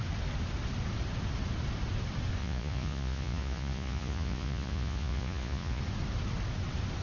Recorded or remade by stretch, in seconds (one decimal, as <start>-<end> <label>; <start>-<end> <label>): 0.0-2.4 recorded; 2.4-5.8 remade; 5.8-7.0 recorded